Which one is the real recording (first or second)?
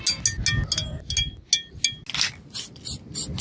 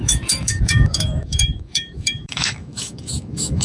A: first